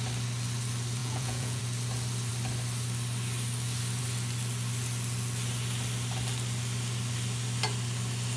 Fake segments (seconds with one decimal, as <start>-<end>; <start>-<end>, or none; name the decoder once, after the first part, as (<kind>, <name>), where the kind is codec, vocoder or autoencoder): 1.0-1.6 (vocoder, Vocos)